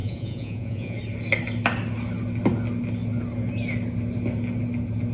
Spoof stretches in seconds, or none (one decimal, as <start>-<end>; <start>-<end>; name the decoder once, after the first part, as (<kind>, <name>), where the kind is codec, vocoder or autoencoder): 0.0-1.0 (vocoder, Vocos)